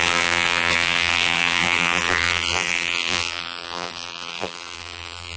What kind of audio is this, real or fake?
fake